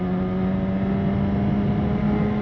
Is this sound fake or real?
real